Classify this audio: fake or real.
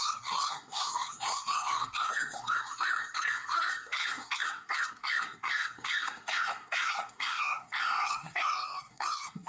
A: fake